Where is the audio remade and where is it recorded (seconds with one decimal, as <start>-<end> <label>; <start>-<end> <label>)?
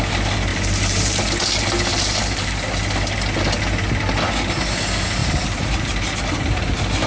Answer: 0.0-0.5 recorded; 0.5-1.2 remade; 1.2-1.9 recorded; 1.9-2.5 remade; 2.5-5.2 recorded; 5.2-7.1 remade